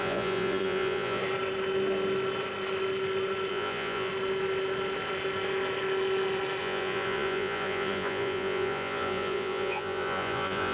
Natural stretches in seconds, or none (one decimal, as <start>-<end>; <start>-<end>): 1.2-3.5; 4.1-6.6